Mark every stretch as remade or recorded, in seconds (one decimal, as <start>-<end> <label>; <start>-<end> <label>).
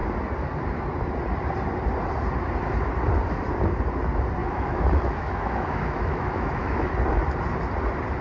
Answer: 0.0-4.4 recorded; 4.4-6.9 remade; 6.9-8.2 recorded